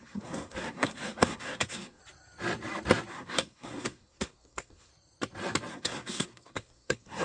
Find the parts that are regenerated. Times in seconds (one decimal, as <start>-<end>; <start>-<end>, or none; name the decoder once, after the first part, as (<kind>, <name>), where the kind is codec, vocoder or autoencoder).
0.0-2.0 (codec, SNAC); 3.1-4.9; 5.7-7.2